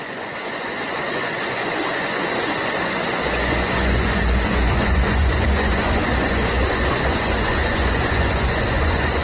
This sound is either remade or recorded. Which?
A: remade